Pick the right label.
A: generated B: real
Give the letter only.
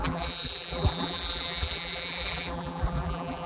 A